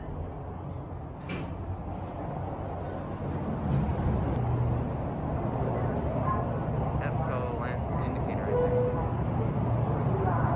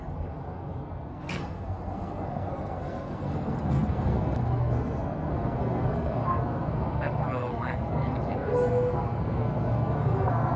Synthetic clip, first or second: second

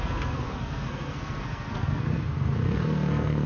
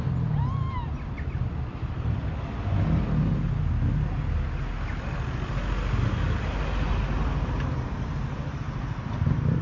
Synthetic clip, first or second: first